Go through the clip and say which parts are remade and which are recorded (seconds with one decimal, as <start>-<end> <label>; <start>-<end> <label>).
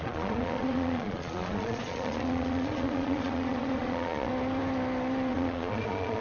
0.0-4.3 remade; 4.3-5.3 recorded; 5.3-6.2 remade